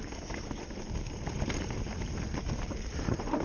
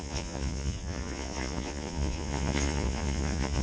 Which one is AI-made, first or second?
second